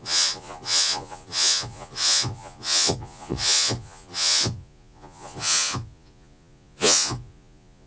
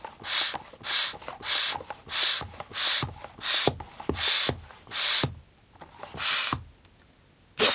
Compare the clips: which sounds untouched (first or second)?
second